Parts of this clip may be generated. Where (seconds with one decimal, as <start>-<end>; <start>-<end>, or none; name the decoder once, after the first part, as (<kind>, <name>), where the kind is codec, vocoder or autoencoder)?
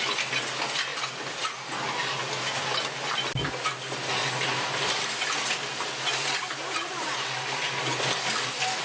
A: none